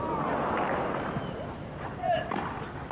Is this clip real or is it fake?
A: real